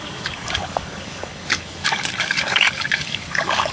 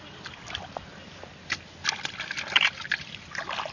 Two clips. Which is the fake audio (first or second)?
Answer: first